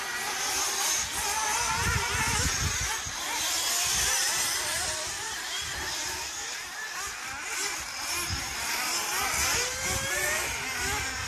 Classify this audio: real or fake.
real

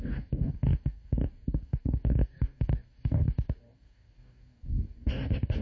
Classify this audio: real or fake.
fake